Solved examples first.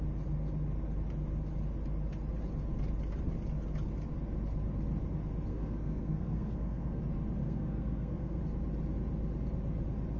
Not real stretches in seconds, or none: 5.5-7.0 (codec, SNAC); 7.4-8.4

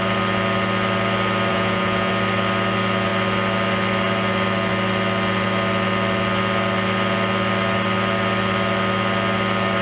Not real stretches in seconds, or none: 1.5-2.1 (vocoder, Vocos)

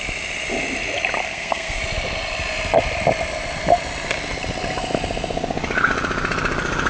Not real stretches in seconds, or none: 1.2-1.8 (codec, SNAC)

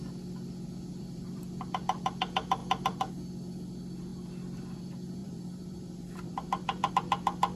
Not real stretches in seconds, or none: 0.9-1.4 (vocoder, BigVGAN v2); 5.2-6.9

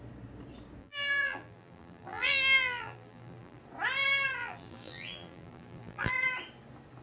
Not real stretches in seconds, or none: 0.8-3.6 (vocoder, BigVGAN v2); 4.4-6.1

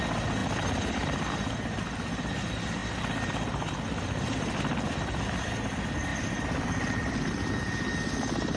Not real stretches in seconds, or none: none

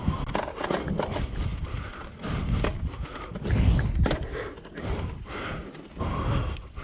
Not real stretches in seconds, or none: none